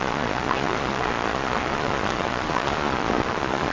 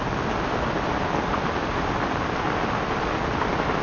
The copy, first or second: first